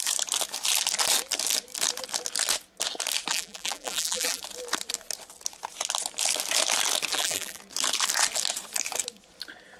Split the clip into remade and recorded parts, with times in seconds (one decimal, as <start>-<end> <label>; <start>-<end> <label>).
0.0-3.3 recorded; 3.3-4.4 remade; 4.4-7.1 recorded; 7.1-7.6 remade; 7.6-9.8 recorded